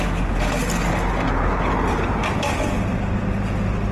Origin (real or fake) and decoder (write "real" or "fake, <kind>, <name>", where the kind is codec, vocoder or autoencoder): real